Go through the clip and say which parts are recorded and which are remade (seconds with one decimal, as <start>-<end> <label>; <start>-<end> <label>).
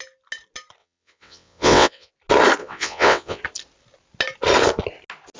0.0-0.8 recorded; 0.8-2.1 remade; 2.1-2.6 recorded; 2.6-3.4 remade; 3.4-5.4 recorded